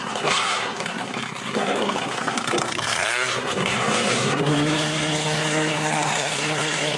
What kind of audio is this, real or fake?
fake